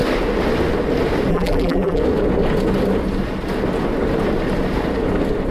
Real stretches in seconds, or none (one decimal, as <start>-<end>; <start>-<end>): 0.0-1.3; 2.0-5.5